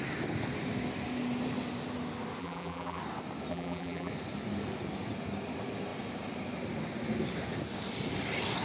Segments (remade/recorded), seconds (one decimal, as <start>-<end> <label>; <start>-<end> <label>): 0.0-2.4 recorded; 2.4-3.0 remade; 3.0-3.5 recorded; 3.5-4.1 remade; 4.1-8.6 recorded